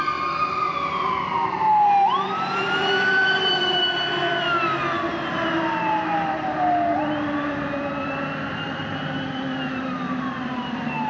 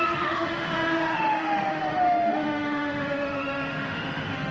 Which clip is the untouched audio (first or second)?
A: first